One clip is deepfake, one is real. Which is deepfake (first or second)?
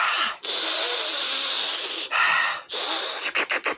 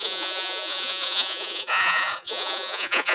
second